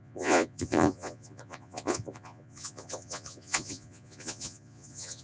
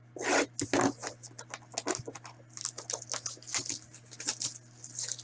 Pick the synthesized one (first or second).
first